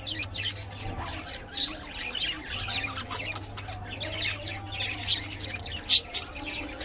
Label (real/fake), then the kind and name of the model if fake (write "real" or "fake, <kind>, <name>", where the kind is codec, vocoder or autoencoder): real